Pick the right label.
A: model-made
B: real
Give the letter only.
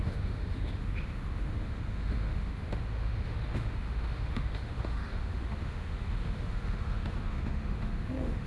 A